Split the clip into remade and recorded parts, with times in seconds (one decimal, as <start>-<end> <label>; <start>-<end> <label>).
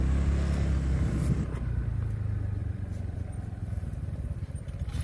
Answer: 0.0-2.6 recorded; 2.6-3.2 remade; 3.2-3.6 recorded; 3.6-4.1 remade; 4.1-5.0 recorded